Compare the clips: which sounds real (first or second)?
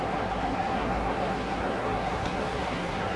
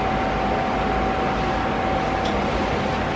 second